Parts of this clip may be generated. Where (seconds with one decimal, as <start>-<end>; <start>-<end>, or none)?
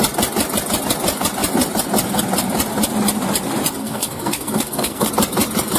3.8-5.1